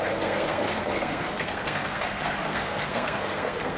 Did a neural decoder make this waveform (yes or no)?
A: yes